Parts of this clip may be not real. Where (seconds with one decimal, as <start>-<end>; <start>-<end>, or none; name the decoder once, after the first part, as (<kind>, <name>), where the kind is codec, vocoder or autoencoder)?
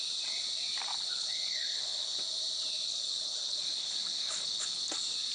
0.9-2.2 (codec, HILCodec); 2.9-4.8